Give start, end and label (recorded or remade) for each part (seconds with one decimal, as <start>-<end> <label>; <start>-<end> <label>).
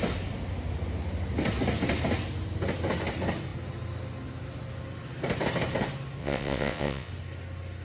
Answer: 0.0-6.2 recorded; 6.2-7.1 remade; 7.1-7.8 recorded